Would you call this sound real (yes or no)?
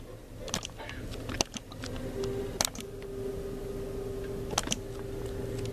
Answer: yes